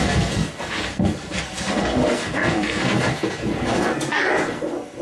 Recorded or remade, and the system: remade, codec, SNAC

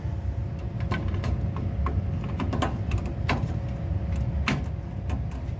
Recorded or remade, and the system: recorded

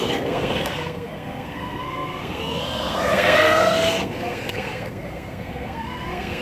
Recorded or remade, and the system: remade, codec, SNAC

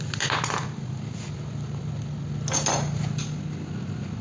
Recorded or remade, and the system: recorded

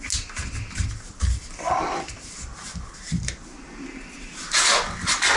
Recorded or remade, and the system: recorded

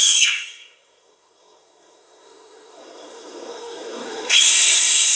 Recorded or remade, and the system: remade, codec, SNAC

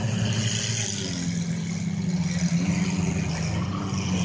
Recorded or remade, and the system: recorded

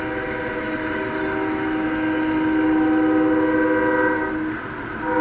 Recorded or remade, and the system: recorded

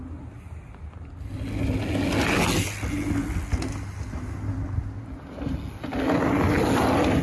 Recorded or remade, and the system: recorded